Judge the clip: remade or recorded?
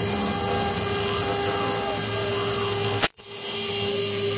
recorded